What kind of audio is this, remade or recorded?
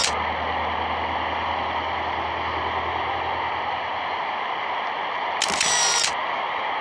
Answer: recorded